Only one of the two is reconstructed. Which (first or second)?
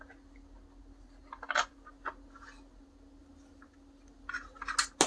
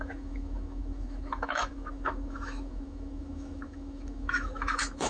second